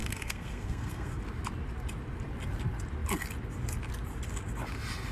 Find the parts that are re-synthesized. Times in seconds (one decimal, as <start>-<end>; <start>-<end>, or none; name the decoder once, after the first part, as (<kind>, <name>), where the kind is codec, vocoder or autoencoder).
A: 0.0-1.2 (codec, SNAC)